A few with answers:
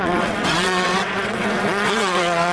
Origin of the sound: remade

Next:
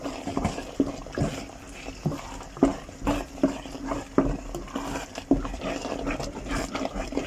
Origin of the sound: recorded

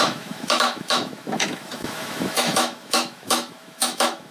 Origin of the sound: remade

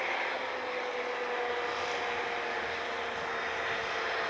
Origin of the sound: recorded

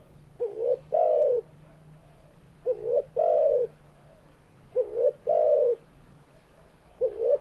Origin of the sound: remade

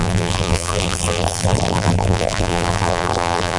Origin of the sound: remade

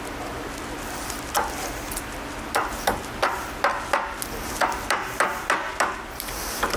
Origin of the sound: recorded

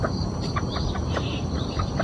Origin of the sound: remade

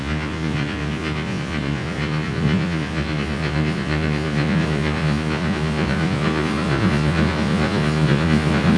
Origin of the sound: remade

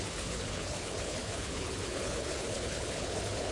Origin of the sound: remade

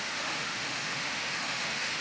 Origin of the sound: remade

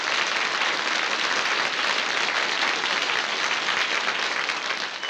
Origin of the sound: recorded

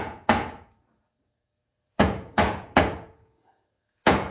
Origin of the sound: remade